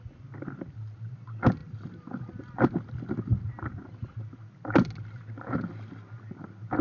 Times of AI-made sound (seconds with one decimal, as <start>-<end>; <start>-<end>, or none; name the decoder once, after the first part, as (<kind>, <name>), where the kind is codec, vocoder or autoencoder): none